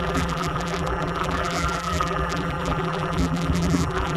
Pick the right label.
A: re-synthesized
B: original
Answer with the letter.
A